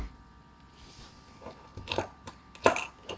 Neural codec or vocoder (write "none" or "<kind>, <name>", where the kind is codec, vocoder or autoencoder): none